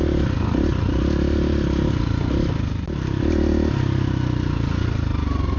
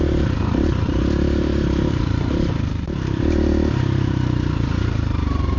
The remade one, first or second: second